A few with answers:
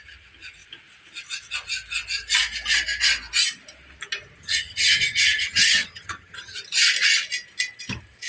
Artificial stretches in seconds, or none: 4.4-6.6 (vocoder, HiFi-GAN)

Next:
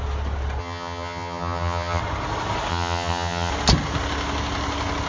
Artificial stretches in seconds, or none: 0.6-2.0 (vocoder, HiFi-GAN); 2.7-3.5

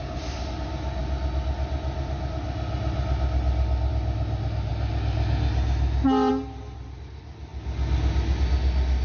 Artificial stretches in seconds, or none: none

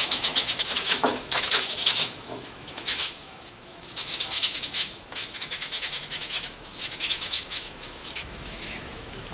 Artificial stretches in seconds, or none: 0.0-9.3 (autoencoder, DAC-VAE)

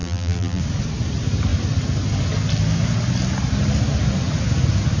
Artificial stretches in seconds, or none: 0.0-0.6 (vocoder, BigVGAN v2)

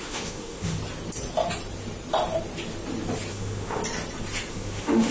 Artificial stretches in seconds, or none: 0.0-0.8 (autoencoder, DAC-VAE); 3.3-3.8; 4.5-5.1

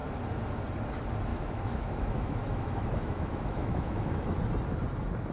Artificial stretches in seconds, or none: 1.3-4.4 (autoencoder, DAC-VAE)